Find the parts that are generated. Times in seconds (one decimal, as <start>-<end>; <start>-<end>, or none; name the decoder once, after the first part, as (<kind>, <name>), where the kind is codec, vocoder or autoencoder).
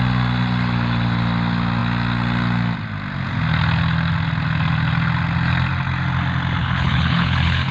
6.6-7.7 (codec, HILCodec)